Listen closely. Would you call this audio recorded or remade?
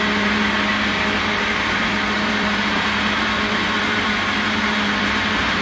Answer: remade